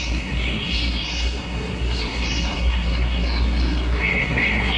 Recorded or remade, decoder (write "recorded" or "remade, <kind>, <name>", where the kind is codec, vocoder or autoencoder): remade, codec, SNAC